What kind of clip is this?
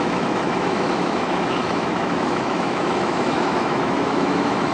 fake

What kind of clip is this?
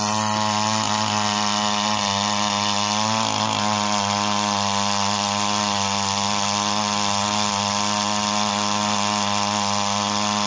real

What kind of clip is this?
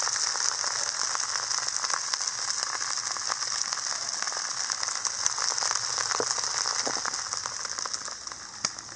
real